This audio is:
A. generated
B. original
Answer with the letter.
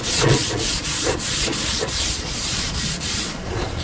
A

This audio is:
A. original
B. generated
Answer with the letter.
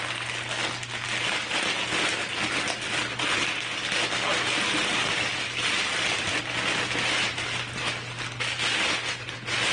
A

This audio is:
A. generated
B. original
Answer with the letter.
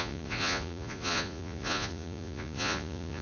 A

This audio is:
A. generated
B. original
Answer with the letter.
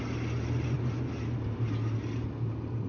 B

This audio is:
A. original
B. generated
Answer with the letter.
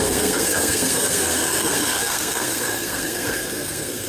B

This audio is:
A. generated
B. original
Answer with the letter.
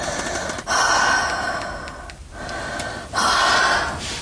B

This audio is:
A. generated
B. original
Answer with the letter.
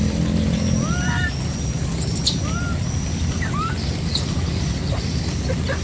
B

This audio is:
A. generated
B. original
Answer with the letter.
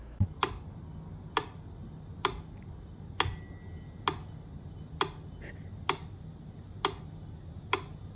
B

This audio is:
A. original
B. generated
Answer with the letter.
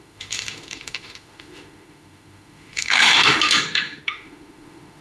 B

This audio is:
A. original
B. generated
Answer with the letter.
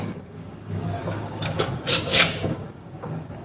B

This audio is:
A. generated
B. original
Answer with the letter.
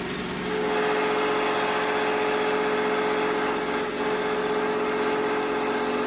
B